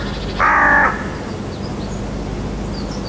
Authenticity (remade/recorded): recorded